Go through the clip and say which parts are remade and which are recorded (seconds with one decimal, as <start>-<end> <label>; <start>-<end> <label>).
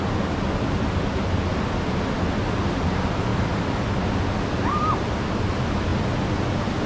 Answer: 0.0-6.9 recorded